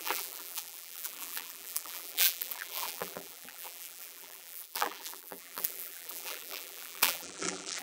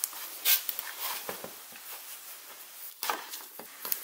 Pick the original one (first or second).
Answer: second